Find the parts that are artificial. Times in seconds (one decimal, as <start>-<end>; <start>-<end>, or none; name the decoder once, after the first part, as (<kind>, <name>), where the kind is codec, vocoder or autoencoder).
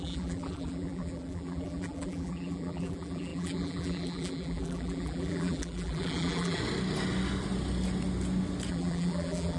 0.0-6.6 (vocoder, BigVGAN v2); 8.7-9.6